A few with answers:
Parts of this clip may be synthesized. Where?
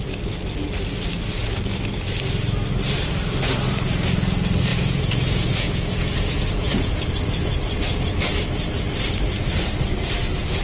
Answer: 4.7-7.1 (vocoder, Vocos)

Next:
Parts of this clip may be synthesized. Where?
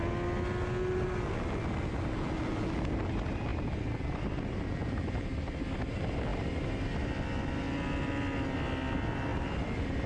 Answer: none